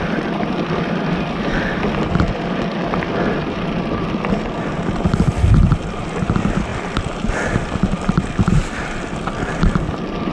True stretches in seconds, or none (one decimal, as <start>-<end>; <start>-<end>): 0.0-10.3